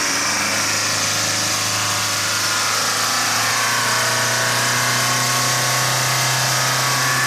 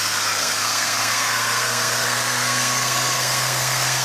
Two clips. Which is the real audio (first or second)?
first